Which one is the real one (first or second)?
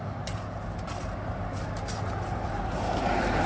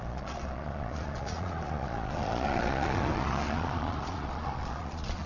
first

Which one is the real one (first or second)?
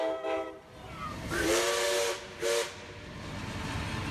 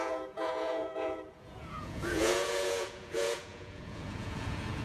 first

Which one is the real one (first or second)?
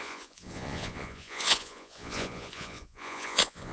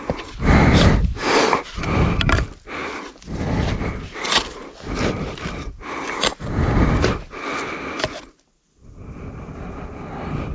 second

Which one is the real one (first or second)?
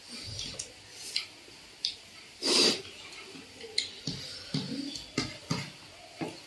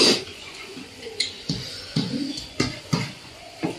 first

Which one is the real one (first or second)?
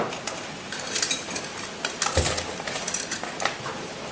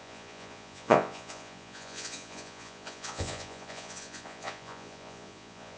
first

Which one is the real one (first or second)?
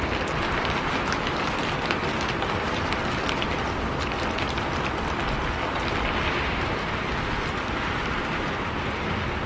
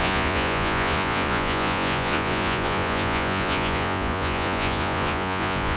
first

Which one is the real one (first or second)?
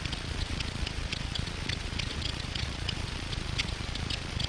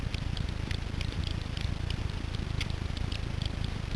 second